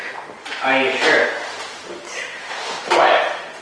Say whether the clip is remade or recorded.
recorded